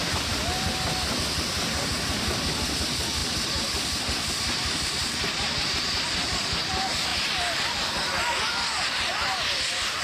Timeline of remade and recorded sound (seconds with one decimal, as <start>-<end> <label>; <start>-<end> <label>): 0.0-7.1 recorded; 7.1-7.6 remade; 7.6-10.0 recorded